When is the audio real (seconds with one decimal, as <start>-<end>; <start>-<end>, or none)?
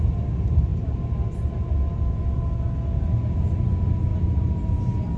0.0-5.2